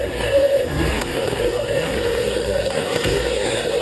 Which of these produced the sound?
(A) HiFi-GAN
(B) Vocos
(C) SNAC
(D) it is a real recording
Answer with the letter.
C